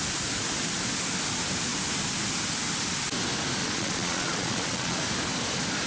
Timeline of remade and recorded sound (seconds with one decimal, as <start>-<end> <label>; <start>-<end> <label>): 0.0-3.6 recorded; 3.6-5.0 remade; 5.0-5.9 recorded